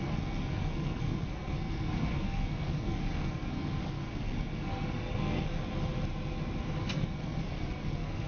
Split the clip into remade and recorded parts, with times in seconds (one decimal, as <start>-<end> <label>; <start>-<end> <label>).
0.0-5.6 remade; 5.6-6.8 recorded; 6.8-8.3 remade